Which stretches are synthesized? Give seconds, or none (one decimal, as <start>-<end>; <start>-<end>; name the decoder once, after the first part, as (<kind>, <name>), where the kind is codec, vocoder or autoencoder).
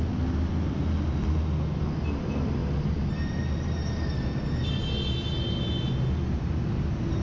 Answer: none